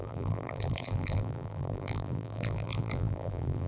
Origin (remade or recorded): remade